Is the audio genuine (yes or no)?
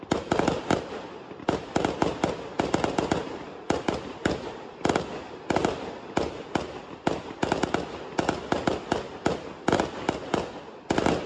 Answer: yes